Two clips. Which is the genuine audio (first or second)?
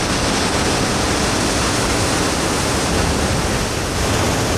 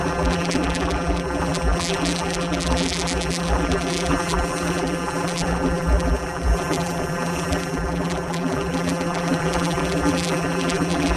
first